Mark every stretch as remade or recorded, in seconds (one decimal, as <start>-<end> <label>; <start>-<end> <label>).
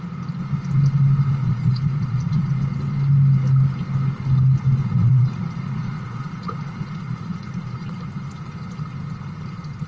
0.0-1.4 recorded; 1.4-2.6 remade; 2.6-4.8 recorded; 4.8-7.9 remade; 7.9-9.9 recorded